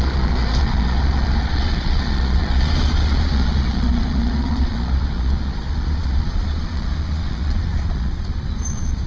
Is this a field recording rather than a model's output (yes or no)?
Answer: no